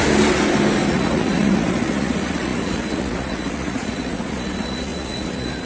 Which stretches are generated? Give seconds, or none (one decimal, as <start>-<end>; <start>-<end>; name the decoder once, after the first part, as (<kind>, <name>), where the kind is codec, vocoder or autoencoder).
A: 0.9-5.7 (vocoder, Vocos)